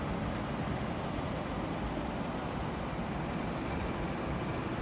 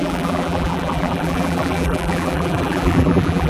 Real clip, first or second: first